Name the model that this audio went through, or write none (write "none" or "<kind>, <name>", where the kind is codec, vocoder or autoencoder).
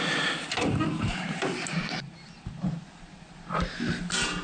none